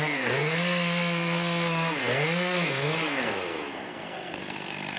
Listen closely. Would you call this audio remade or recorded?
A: remade